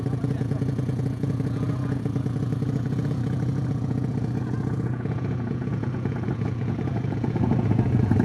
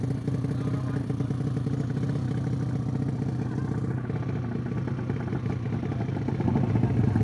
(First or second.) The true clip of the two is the second